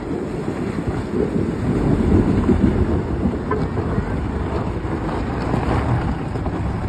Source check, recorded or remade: recorded